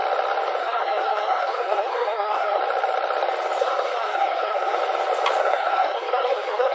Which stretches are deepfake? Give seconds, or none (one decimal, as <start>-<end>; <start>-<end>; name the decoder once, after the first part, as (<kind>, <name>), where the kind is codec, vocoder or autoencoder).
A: 0.6-2.6 (codec, SNAC); 3.6-4.8; 5.4-6.7